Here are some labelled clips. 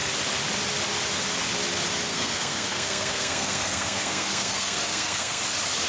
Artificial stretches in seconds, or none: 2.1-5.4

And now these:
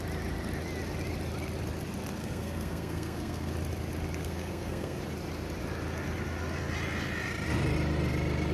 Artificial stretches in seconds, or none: 2.2-3.5; 4.2-5.0